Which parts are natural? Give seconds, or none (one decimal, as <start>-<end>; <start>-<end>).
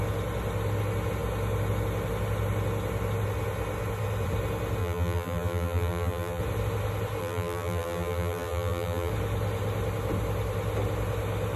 0.0-4.8; 6.4-7.2; 9.1-11.6